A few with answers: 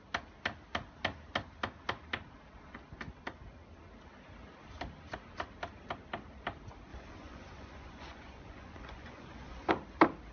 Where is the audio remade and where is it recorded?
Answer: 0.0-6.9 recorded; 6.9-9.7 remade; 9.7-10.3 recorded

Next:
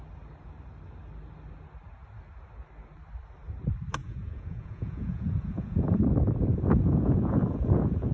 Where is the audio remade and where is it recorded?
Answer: 0.0-4.0 recorded; 4.0-6.0 remade; 6.0-6.5 recorded; 6.5-8.1 remade